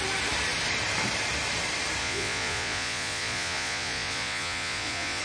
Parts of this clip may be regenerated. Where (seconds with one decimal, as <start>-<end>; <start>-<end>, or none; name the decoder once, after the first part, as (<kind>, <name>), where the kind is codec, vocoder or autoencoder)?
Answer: 2.0-5.2 (vocoder, Vocos)